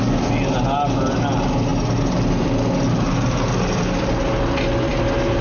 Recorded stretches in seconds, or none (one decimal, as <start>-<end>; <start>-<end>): 0.0-5.4